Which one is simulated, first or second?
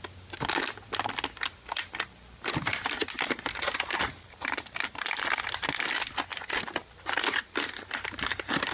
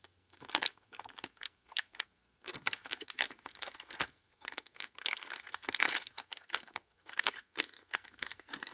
second